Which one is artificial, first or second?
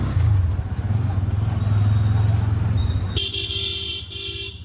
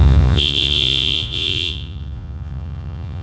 second